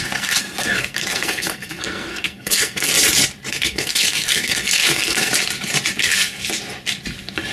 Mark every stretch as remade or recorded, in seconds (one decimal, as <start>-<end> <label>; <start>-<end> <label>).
0.0-2.9 remade; 2.9-3.5 recorded; 3.5-5.3 remade; 5.3-6.0 recorded; 6.0-6.4 remade; 6.4-7.5 recorded

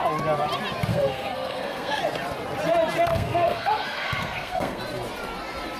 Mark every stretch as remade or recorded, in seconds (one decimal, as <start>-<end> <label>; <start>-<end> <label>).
0.0-0.9 recorded; 0.9-2.0 remade; 2.0-3.1 recorded; 3.1-4.8 remade; 4.8-5.8 recorded

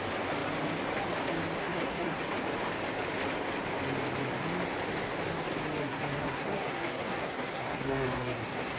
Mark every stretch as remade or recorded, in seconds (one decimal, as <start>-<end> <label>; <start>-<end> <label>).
0.0-1.6 recorded; 1.6-2.2 remade; 2.2-5.8 recorded; 5.8-8.8 remade

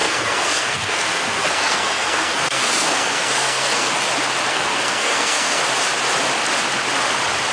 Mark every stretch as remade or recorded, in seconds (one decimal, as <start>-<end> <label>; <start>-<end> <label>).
0.0-3.9 remade; 3.9-4.5 recorded; 4.5-5.6 remade; 5.6-7.5 recorded

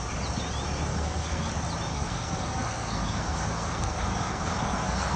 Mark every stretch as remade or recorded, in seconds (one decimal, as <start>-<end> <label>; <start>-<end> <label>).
0.0-0.9 recorded; 0.9-1.5 remade; 1.5-1.9 recorded; 1.9-5.2 remade